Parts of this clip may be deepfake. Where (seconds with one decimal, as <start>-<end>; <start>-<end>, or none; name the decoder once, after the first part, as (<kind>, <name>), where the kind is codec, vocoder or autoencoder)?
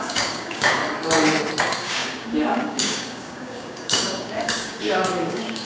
0.0-0.8 (codec, DAC); 1.6-5.6